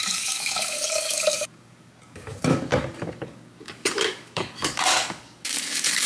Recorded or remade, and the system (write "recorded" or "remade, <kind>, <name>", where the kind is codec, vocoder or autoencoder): remade, codec, DAC